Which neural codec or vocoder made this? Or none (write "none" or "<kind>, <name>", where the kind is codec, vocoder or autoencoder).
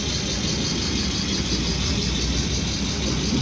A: none